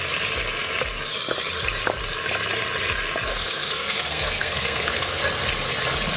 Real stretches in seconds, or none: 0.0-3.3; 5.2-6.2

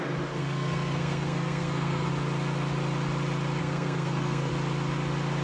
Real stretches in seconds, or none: 0.0-0.4; 2.1-3.6; 4.5-5.4

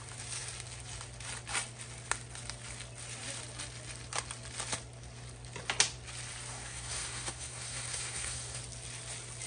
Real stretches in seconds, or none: 0.0-6.5; 8.6-9.5

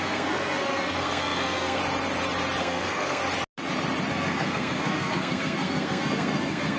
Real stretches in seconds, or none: 1.8-2.6; 3.2-4.1

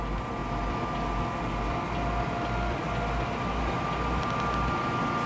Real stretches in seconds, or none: 0.0-5.3

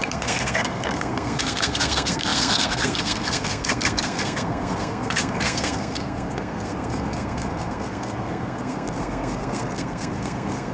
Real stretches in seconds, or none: none